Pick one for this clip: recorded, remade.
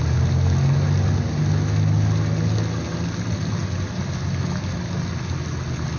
recorded